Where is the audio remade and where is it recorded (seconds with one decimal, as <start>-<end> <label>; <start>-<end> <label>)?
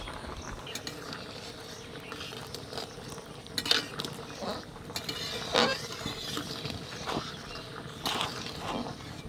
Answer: 0.0-9.3 recorded